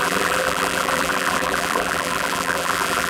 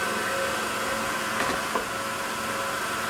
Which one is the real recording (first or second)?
second